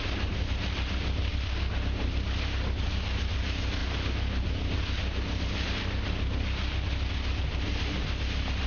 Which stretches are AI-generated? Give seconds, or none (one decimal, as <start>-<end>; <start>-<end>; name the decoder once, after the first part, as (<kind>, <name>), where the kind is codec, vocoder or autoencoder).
none

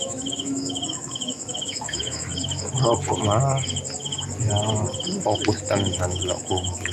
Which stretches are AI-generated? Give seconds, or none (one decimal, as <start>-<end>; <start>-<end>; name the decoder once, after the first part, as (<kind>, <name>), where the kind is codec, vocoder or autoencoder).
0.0-2.3 (autoencoder, DAC-VAE); 6.1-6.9

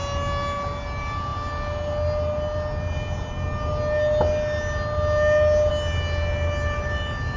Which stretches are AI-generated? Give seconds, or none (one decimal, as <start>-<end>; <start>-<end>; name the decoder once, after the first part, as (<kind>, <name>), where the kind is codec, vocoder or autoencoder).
none

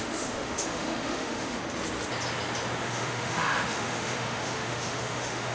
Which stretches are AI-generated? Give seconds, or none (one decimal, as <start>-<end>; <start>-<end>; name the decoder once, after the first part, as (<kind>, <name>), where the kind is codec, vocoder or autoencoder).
0.0-1.6 (autoencoder, DAC-VAE); 2.8-5.5

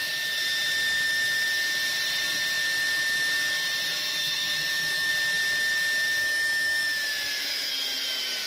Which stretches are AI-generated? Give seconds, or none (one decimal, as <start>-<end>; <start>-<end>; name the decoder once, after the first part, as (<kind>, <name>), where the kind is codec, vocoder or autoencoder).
4.2-5.1 (autoencoder, DAC-VAE); 6.2-7.7

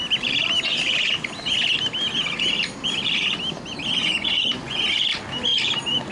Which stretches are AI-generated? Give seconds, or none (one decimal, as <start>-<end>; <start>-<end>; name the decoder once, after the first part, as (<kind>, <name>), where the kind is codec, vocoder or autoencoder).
4.0-4.8 (vocoder, Vocos)

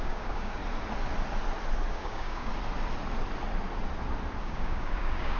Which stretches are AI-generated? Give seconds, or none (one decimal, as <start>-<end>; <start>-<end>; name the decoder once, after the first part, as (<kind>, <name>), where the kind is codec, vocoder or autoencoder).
0.0-0.6 (codec, DAC); 1.9-2.5; 4.4-5.4